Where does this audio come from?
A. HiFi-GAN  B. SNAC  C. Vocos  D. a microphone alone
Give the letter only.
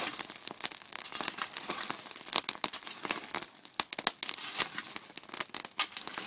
D